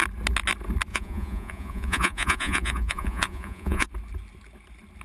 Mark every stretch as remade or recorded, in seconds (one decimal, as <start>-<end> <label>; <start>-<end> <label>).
0.0-0.9 recorded; 0.9-3.9 remade; 3.9-5.0 recorded